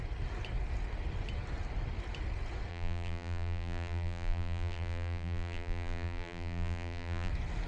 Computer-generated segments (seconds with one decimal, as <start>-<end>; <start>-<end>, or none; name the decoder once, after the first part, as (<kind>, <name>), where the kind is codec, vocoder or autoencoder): 2.7-7.3 (vocoder, BigVGAN v2)